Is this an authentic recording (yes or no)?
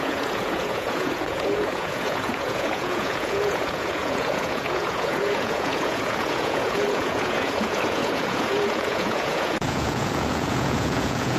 no